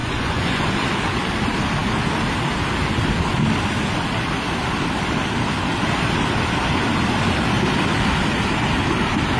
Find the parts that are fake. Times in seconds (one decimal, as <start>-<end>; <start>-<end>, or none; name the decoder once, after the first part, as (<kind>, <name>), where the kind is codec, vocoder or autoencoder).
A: 0.0-0.7 (vocoder, Vocos)